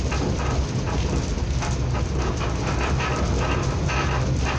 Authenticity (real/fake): real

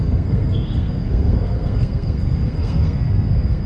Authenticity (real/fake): fake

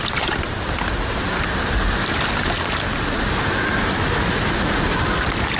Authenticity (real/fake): real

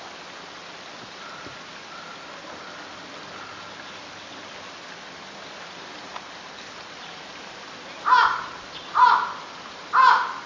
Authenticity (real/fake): real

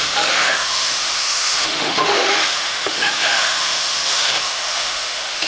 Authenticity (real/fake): fake